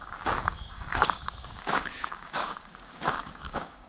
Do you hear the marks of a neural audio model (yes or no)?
yes